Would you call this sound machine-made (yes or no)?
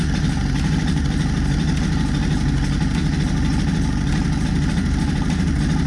no